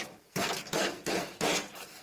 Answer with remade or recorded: remade